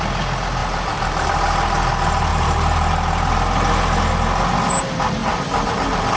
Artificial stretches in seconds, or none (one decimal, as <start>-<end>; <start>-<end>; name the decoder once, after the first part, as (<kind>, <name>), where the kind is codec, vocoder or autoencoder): 0.6-1.3 (vocoder, BigVGAN v2); 2.3-2.9; 5.2-6.2